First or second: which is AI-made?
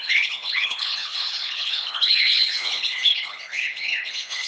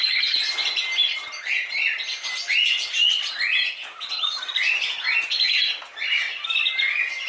first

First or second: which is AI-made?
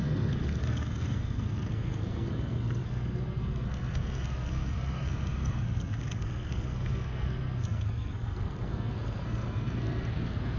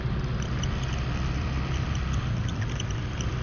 first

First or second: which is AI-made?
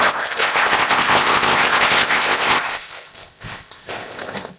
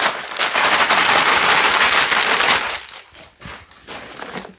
first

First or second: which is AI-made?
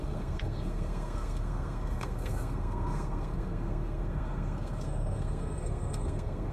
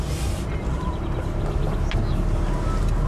first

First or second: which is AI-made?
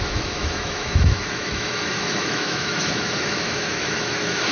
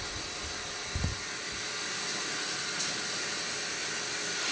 first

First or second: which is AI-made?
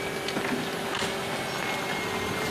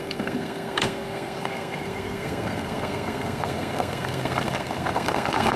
second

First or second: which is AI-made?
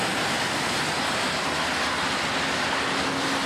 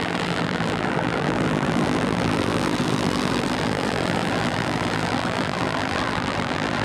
second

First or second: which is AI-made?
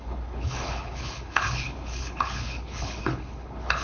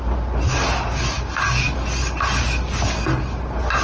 first